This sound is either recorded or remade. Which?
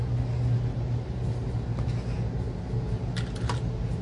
recorded